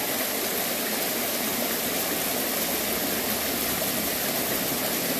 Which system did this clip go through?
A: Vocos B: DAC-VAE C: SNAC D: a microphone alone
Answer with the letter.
D